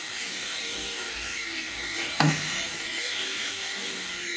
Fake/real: fake